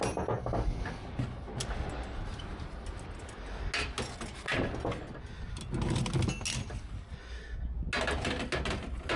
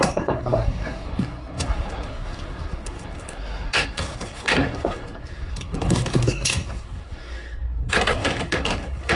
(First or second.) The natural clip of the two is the first